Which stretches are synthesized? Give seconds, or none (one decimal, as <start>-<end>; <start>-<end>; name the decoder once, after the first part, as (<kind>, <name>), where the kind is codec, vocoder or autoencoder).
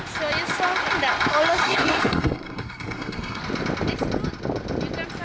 1.6-3.4 (codec, SNAC)